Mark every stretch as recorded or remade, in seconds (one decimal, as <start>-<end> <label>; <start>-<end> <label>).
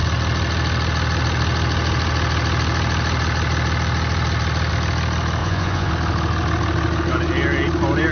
0.0-5.4 recorded; 5.4-5.9 remade; 5.9-8.1 recorded